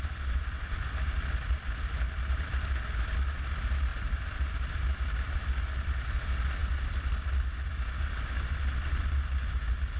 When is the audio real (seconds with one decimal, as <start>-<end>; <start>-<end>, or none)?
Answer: 0.0-10.0